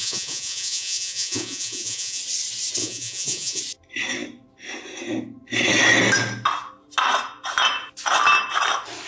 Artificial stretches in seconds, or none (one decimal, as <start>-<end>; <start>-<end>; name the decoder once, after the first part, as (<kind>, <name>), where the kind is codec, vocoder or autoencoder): 0.0-2.2 (vocoder, Vocos); 2.8-3.6